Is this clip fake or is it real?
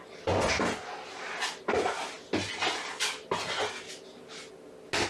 real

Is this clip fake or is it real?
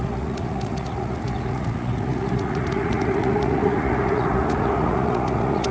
fake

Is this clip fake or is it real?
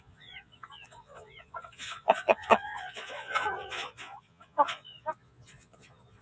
fake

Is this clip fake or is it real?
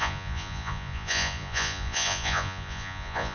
fake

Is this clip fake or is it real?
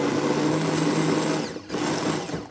real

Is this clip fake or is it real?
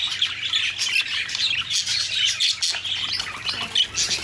real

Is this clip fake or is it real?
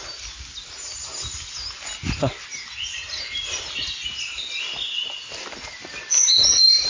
real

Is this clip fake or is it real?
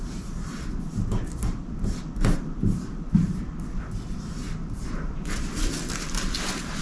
real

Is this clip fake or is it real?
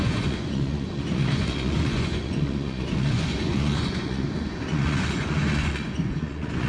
fake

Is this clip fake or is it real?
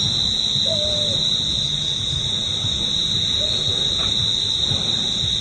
real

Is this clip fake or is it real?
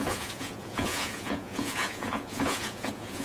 fake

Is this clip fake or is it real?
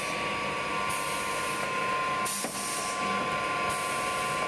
real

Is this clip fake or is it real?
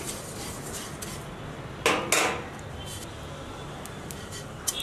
real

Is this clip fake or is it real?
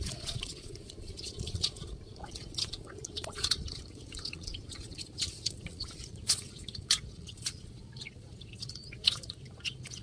fake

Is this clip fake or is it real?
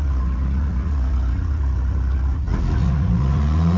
fake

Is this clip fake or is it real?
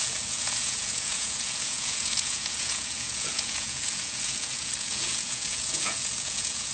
fake